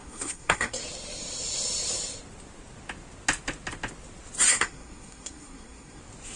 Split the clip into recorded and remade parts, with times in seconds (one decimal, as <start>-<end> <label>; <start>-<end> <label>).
0.0-0.8 remade; 0.8-4.5 recorded; 4.5-6.0 remade; 6.0-6.4 recorded